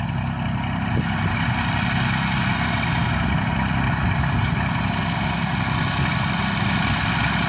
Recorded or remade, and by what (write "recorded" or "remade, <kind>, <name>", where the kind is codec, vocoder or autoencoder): recorded